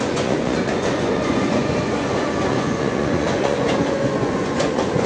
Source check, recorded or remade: remade